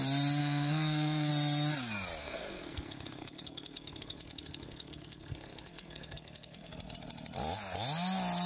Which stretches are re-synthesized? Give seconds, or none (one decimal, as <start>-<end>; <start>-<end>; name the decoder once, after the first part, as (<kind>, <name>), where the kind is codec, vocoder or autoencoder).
0.4-1.3 (codec, SNAC); 2.2-6.7